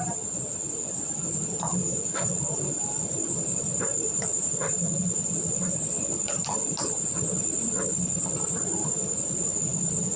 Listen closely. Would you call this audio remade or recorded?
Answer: recorded